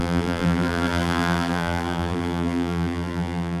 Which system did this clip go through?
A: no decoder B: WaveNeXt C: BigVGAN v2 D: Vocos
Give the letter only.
C